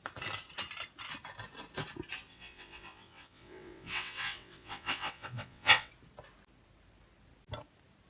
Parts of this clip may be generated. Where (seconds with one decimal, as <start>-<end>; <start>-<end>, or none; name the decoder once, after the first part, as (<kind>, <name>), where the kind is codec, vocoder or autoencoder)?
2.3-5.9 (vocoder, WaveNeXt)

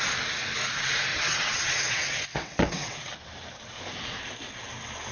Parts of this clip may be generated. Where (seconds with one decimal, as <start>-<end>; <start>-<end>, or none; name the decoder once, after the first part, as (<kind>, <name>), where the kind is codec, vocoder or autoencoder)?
1.1-3.1 (vocoder, WaveNeXt)

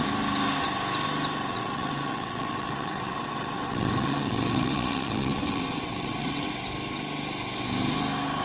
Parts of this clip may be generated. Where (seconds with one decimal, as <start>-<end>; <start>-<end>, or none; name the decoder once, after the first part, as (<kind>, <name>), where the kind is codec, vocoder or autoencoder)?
1.5-6.5 (vocoder, WaveNeXt)